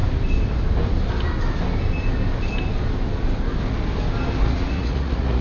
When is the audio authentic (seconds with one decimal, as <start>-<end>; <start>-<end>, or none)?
0.0-4.4